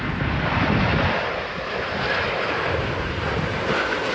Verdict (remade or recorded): recorded